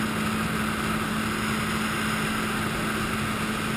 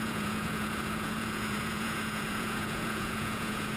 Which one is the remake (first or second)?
second